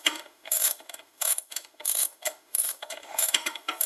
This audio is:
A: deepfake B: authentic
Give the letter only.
A